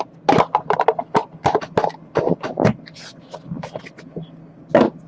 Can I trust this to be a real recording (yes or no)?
yes